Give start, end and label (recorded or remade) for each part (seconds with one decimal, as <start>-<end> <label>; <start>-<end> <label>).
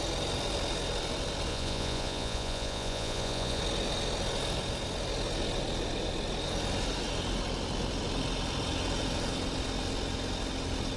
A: 0.0-1.5 recorded; 1.5-3.6 remade; 3.6-11.0 recorded